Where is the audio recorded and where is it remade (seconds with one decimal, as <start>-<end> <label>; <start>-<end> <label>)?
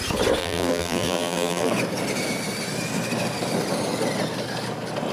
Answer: 0.0-0.4 recorded; 0.4-1.7 remade; 1.7-5.1 recorded